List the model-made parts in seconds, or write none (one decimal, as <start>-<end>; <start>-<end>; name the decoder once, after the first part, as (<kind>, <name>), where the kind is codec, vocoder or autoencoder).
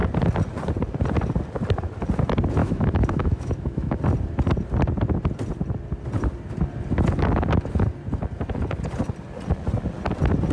2.6-4.0 (autoencoder, DAC-VAE)